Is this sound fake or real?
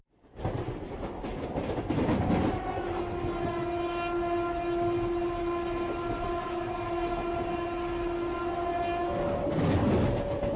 real